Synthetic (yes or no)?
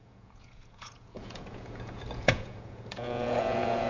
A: yes